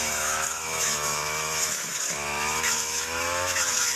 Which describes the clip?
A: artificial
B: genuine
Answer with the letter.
A